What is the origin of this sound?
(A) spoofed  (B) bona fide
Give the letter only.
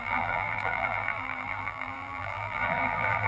A